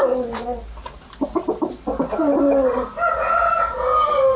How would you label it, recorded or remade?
recorded